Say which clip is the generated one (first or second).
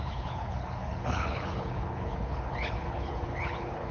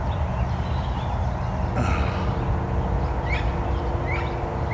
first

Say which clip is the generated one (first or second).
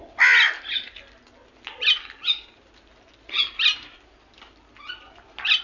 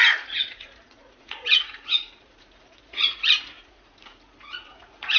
second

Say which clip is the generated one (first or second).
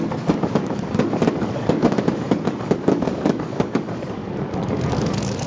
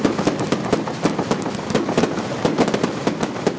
first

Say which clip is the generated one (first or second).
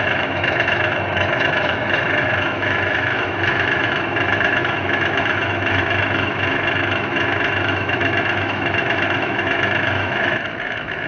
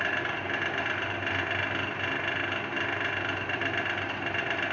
first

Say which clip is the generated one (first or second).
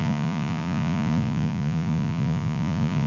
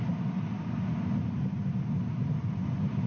first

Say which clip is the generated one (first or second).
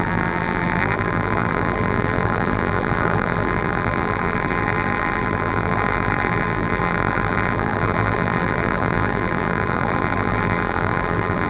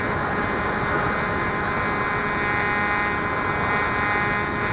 first